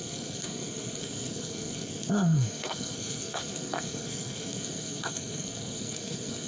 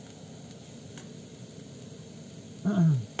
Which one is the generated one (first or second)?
first